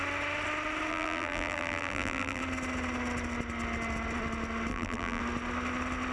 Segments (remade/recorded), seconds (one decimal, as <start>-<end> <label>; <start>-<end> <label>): 0.0-0.9 recorded; 0.9-2.4 remade; 2.4-4.7 recorded; 4.7-5.2 remade; 5.2-6.1 recorded